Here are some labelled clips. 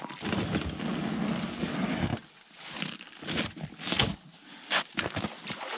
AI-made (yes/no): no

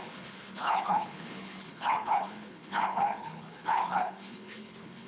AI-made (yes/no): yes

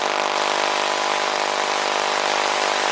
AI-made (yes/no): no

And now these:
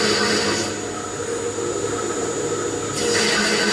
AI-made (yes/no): no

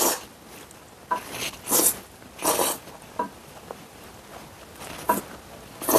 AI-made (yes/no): no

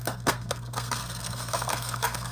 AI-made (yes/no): yes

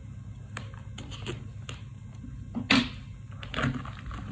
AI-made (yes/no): no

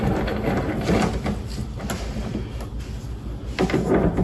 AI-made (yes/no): no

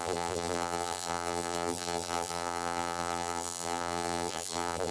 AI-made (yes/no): yes